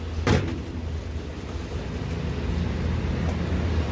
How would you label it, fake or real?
real